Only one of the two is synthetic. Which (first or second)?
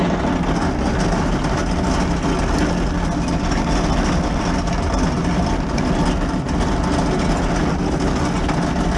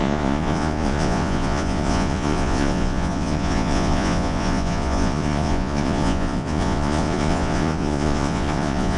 second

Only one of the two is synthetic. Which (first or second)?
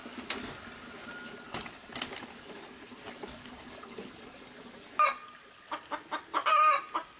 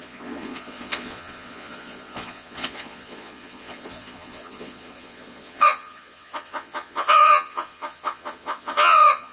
second